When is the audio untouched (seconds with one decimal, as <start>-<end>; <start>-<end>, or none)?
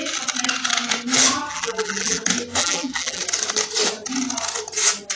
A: 0.0-1.5; 2.2-2.6; 3.2-5.2